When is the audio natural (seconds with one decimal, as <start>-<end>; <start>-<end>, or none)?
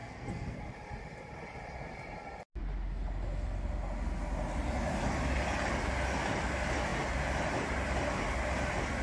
0.6-9.0